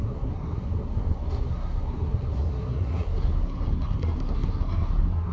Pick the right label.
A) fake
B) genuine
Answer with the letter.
A